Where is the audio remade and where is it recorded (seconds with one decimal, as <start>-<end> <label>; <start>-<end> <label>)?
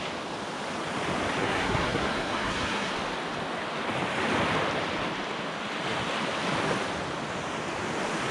0.0-1.4 recorded; 1.4-2.9 remade; 2.9-8.3 recorded